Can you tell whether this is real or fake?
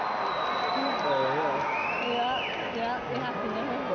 real